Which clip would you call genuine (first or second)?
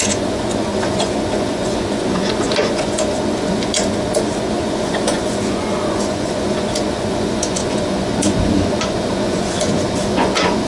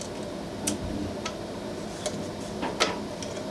second